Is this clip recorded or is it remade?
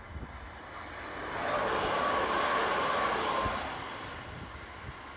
recorded